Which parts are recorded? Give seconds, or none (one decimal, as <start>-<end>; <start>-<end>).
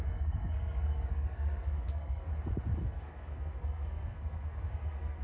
2.3-2.8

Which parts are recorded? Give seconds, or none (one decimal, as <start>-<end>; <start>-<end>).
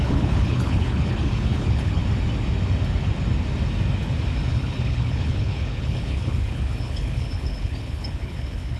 2.0-4.5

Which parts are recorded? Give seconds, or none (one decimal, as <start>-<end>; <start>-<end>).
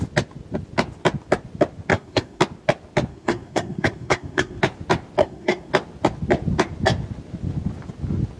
0.0-1.9; 2.4-3.1; 4.6-5.2; 5.7-8.4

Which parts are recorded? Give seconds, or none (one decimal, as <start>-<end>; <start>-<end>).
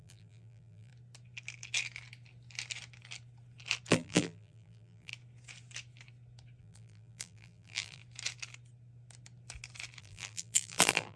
0.9-3.9; 5.1-6.6; 8.0-10.0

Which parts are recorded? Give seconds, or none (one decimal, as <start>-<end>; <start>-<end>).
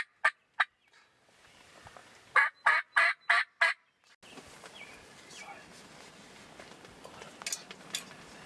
0.0-8.5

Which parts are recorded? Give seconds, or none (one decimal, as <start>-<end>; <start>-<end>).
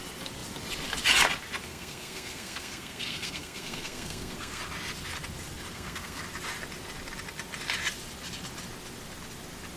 0.0-1.7; 4.6-5.7; 6.2-9.8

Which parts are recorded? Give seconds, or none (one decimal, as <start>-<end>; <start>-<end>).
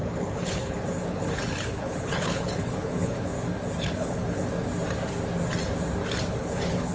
3.3-3.8; 4.5-6.4